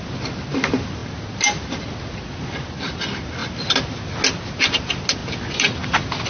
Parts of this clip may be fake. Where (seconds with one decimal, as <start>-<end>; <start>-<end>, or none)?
none